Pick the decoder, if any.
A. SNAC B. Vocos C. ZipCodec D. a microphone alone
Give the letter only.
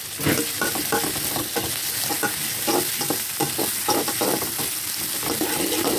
D